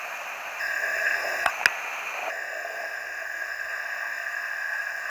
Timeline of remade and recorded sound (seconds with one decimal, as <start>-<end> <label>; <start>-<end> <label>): 0.0-0.6 recorded; 0.6-1.5 remade; 1.5-2.3 recorded; 2.3-5.1 remade